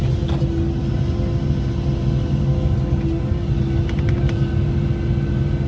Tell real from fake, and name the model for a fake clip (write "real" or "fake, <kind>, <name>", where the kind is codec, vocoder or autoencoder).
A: real